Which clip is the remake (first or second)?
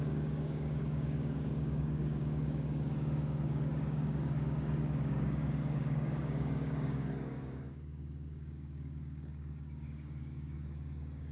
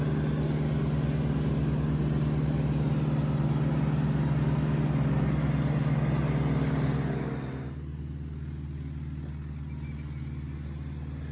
first